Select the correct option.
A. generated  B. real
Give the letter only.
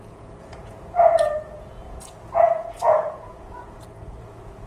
A